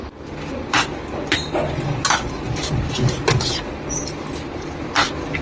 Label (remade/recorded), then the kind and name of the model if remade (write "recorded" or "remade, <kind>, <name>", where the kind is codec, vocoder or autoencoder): recorded